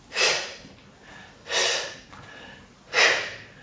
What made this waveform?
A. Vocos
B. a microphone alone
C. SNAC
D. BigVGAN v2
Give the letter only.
B